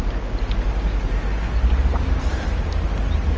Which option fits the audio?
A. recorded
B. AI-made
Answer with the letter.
A